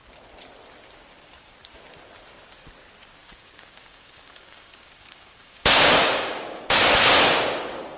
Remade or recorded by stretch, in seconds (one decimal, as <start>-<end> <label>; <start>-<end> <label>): 0.0-3.2 recorded; 3.2-6.6 remade; 6.6-8.0 recorded

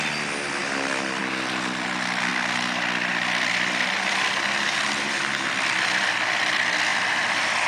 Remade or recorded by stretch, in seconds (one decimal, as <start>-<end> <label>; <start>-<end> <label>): 0.0-7.7 recorded

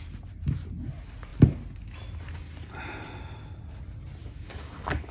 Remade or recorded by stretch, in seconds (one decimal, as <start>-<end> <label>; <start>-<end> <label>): 0.0-4.2 recorded; 4.2-5.1 remade

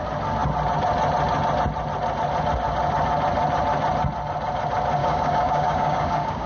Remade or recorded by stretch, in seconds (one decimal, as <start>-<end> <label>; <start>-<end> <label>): 0.0-5.0 recorded; 5.0-6.5 remade